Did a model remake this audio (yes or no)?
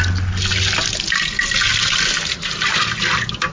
no